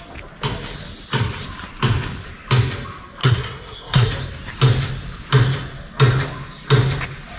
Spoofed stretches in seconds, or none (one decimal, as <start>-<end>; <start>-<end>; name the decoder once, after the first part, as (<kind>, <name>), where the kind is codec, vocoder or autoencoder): 3.2-4.1 (codec, SNAC)

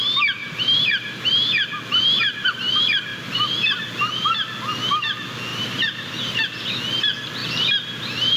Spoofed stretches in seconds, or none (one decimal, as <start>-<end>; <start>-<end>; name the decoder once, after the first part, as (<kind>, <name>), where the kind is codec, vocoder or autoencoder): 0.4-1.3 (vocoder, BigVGAN v2); 3.1-3.9; 5.5-6.2; 7.4-8.4